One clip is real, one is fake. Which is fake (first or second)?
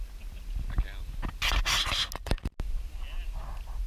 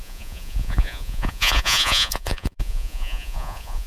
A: second